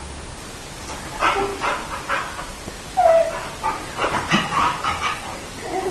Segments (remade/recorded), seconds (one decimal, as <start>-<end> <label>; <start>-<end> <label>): 0.0-1.5 recorded; 1.5-2.4 remade; 2.4-4.0 recorded; 4.0-5.5 remade; 5.5-5.9 recorded